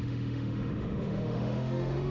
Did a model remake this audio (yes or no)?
yes